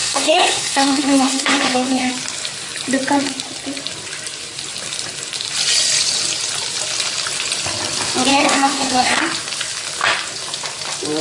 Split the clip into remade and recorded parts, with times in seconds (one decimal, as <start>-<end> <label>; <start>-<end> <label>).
0.0-2.1 remade; 2.1-8.3 recorded; 8.3-9.2 remade; 9.2-11.2 recorded